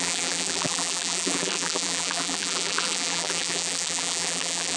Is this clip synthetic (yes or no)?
yes